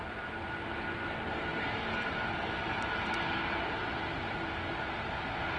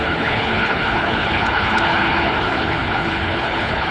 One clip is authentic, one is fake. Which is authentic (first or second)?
first